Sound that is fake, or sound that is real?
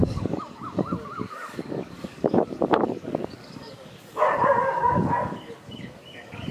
fake